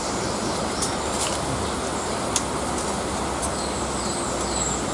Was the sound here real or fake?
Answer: real